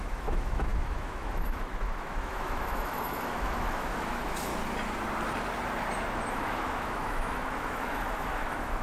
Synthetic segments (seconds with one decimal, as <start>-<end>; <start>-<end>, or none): 0.0-4.5; 6.3-8.8